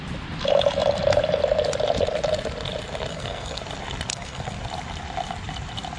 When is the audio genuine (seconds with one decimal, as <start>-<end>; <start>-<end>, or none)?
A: 0.0-3.1; 3.6-4.1; 4.6-6.0